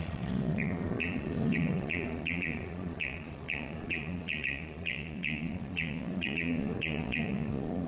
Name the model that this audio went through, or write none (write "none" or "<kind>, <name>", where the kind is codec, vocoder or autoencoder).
vocoder, Vocos